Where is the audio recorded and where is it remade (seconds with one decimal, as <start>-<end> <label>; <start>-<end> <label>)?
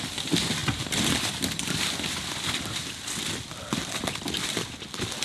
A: 0.0-5.2 recorded